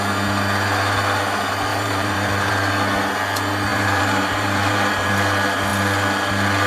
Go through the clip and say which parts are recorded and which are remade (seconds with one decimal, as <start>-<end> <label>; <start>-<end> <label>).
0.0-1.7 recorded; 1.7-2.5 remade; 2.5-3.7 recorded; 3.7-5.1 remade; 5.1-6.7 recorded